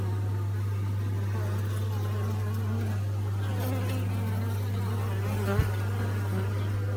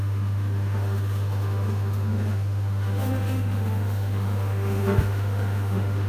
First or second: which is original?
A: first